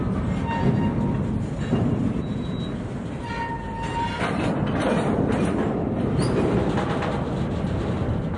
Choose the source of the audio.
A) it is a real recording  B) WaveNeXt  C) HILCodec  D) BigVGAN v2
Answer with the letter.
A